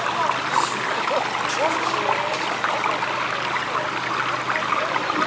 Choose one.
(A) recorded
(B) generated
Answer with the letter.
A